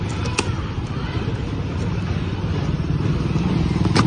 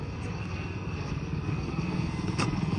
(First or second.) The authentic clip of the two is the first